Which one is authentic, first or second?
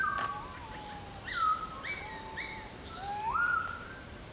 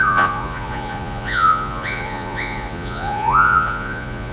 first